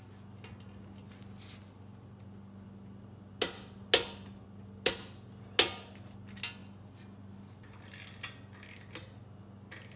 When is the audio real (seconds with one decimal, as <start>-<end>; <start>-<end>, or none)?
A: 0.0-10.0

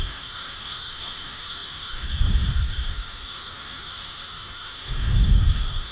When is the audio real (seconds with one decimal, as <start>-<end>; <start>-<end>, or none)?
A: none